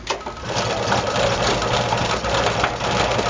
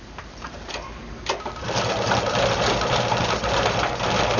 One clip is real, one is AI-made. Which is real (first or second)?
first